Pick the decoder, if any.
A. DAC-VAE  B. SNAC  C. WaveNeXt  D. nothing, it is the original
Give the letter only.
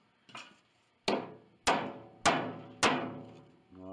D